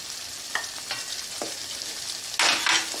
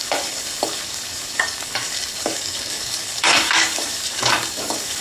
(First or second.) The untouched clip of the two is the first